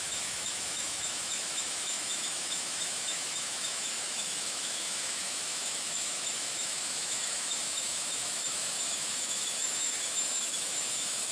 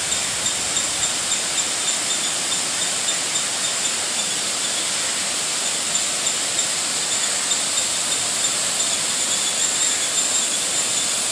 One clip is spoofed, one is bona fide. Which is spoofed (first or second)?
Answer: first